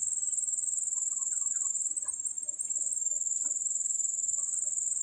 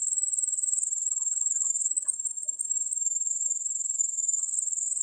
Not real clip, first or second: second